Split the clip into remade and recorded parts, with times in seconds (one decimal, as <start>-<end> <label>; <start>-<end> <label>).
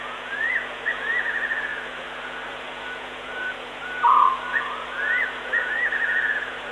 0.0-6.7 remade